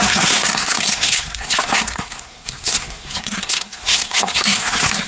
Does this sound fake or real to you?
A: fake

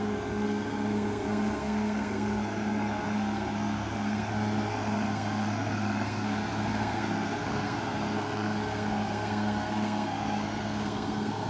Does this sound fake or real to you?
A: fake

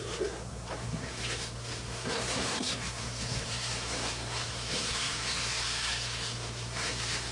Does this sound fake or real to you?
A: fake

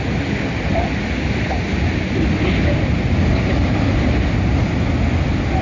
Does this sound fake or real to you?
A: real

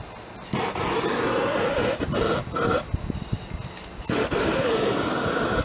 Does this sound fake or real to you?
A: real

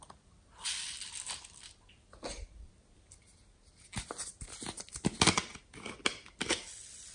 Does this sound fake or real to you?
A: real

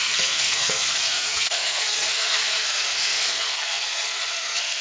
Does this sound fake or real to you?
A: fake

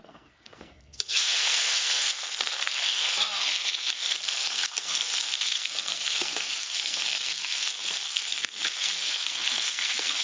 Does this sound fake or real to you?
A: fake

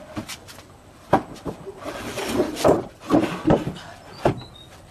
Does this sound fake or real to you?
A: real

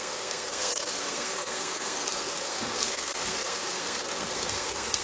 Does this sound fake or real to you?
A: fake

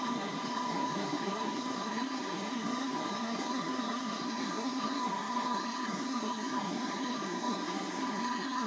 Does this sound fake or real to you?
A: fake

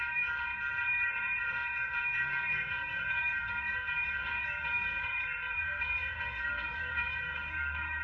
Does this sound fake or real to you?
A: fake